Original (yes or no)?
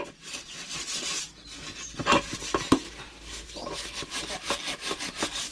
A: yes